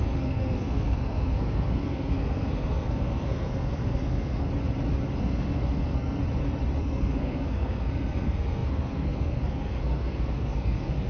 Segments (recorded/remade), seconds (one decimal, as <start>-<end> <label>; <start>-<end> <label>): 0.0-4.5 remade; 4.5-5.2 recorded; 5.2-6.2 remade; 6.2-6.8 recorded; 6.8-11.1 remade